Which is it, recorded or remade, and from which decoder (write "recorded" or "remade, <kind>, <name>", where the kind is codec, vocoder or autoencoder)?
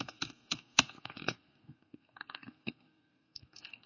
remade, codec, SNAC